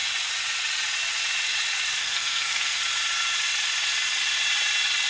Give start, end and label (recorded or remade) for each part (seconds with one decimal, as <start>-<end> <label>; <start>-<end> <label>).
0.0-2.0 recorded; 2.0-2.8 remade; 2.8-5.1 recorded